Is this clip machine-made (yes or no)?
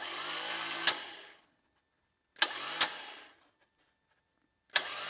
no